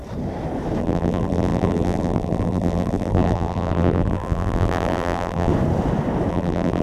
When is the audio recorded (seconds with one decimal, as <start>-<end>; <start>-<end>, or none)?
0.0-0.8; 5.5-6.3